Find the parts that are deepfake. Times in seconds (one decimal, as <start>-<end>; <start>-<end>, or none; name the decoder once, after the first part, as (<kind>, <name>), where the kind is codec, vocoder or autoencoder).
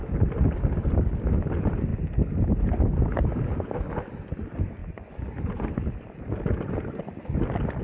none